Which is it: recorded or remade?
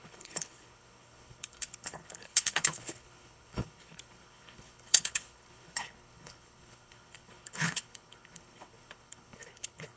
remade